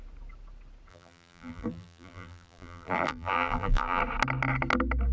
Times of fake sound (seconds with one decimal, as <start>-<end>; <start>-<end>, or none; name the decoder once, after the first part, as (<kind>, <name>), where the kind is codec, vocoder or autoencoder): 0.9-4.0 (vocoder, BigVGAN v2)